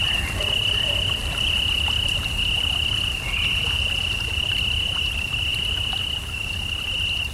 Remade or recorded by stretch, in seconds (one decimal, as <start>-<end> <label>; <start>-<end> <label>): 0.0-7.3 recorded